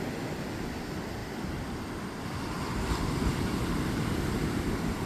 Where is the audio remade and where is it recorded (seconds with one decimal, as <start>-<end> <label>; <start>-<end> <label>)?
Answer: 0.0-5.1 recorded